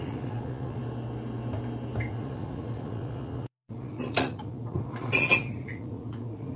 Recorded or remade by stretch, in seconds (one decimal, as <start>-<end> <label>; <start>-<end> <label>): 0.0-0.8 remade; 0.8-2.1 recorded; 2.1-6.6 remade